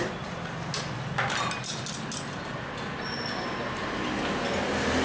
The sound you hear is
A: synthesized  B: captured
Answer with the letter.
B